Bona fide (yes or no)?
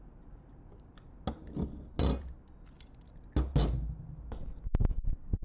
yes